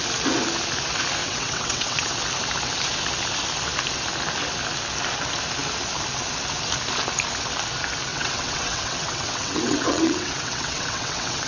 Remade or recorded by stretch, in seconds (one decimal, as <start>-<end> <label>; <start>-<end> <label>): 0.0-1.2 recorded; 1.2-2.1 remade; 2.1-8.1 recorded; 8.1-11.5 remade